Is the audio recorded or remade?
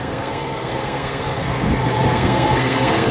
remade